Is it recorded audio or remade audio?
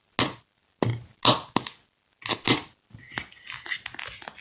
recorded